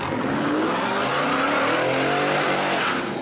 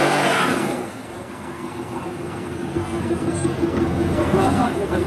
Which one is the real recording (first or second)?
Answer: first